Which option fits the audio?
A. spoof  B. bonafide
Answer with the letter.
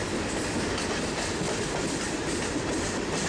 B